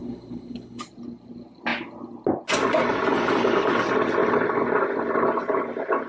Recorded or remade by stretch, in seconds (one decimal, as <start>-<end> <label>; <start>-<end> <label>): 0.0-0.8 remade; 0.8-6.1 recorded